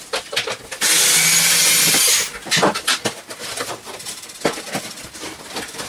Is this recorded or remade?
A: recorded